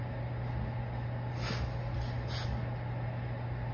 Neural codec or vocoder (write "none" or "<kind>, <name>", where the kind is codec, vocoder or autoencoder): none